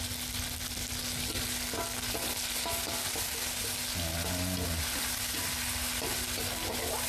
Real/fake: real